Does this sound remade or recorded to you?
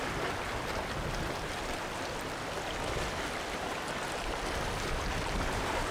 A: recorded